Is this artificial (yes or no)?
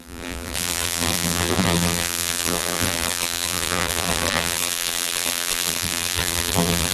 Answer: yes